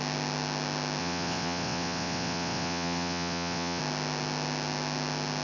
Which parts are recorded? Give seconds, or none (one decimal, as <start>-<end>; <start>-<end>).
0.0-1.0; 3.8-5.4